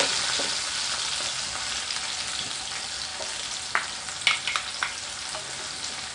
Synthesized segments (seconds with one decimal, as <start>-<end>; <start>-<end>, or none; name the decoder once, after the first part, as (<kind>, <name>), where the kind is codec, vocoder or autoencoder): none